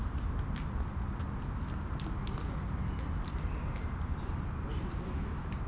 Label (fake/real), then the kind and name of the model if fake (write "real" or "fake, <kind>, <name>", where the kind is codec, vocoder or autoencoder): real